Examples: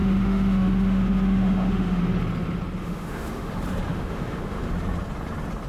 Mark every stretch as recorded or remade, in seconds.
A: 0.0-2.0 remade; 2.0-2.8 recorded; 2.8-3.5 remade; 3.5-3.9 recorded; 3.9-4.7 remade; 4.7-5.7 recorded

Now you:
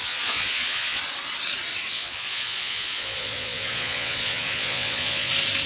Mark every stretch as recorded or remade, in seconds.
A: 0.0-1.0 remade; 1.0-1.9 recorded; 1.9-5.3 remade; 5.3-5.7 recorded

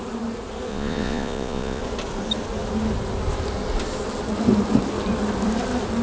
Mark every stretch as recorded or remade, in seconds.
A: 0.0-0.7 recorded; 0.7-1.8 remade; 1.8-6.0 recorded

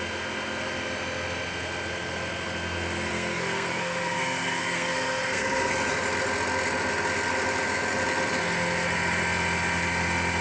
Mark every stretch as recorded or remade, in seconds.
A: 0.0-3.1 recorded; 3.1-5.7 remade; 5.7-10.4 recorded

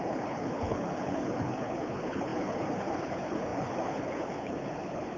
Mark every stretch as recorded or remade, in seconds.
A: 0.0-5.2 remade

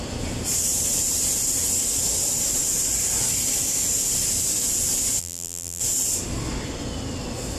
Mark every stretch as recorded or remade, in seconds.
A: 0.0-5.2 recorded; 5.2-5.8 remade; 5.8-7.6 recorded